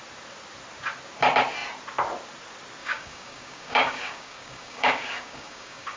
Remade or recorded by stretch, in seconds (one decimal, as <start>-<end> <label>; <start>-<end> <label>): 0.0-2.8 recorded; 2.8-6.0 remade